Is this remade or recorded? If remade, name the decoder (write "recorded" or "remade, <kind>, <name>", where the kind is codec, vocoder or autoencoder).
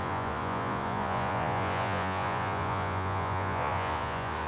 remade, vocoder, Vocos